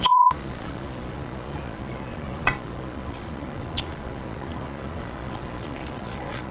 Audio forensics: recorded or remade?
remade